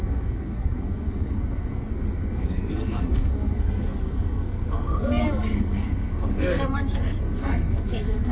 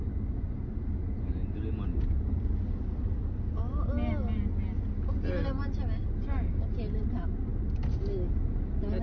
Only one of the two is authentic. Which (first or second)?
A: second